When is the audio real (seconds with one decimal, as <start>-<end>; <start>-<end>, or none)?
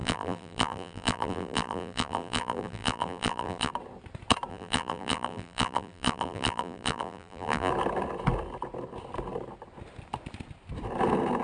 3.7-4.5; 7.7-11.4